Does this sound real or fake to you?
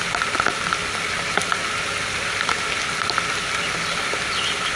real